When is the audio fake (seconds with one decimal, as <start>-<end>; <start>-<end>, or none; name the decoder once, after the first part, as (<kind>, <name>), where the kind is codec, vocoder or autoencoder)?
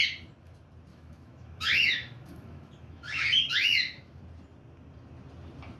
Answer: 0.9-4.2 (autoencoder, DAC-VAE)